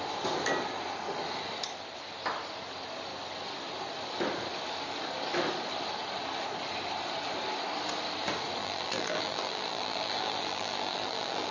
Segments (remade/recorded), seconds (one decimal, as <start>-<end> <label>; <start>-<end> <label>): 0.0-8.6 recorded; 8.6-11.5 remade